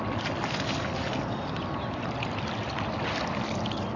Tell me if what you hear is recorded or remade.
recorded